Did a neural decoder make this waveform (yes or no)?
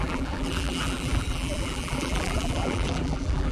yes